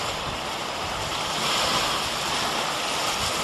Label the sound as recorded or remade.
remade